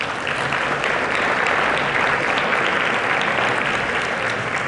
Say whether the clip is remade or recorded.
recorded